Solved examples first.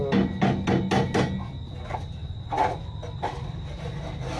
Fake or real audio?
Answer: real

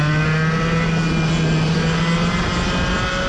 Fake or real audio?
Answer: real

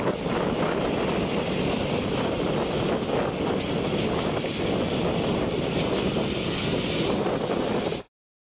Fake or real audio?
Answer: real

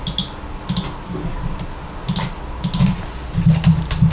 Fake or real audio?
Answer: real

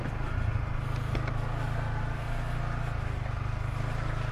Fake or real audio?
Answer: real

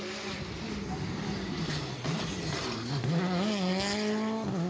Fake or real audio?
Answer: real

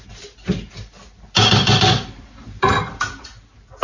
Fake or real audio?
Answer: real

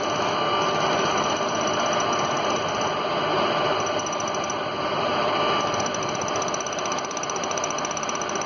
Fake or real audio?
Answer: real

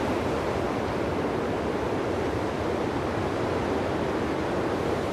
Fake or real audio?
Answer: real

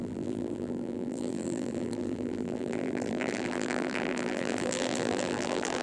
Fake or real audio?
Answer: fake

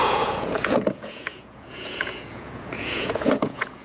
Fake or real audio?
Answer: fake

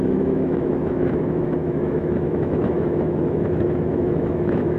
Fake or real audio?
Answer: fake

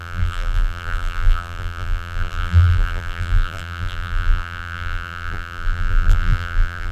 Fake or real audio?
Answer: fake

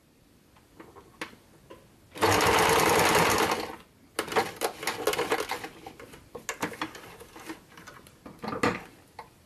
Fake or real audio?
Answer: real